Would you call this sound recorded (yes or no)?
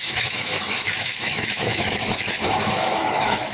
no